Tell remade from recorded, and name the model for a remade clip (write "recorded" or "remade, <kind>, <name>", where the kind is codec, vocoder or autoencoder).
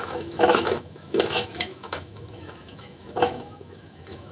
remade, autoencoder, DAC-VAE